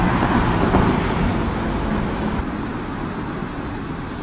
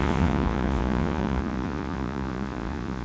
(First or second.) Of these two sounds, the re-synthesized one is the second